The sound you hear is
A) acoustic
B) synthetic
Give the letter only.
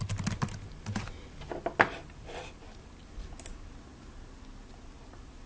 A